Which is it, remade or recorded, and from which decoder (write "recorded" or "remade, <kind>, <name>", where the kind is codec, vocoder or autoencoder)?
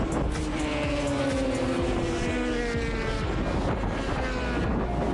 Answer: recorded